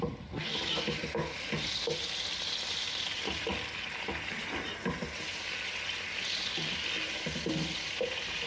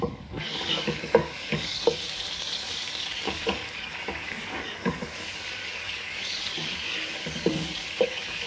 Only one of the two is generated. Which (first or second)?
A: second